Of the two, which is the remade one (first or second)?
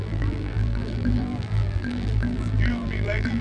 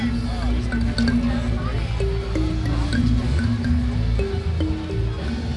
first